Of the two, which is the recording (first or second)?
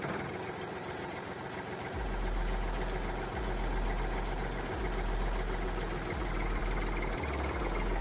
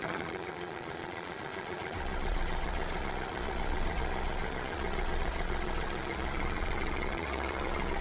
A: first